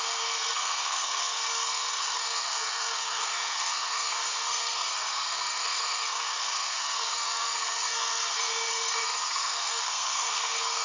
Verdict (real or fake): fake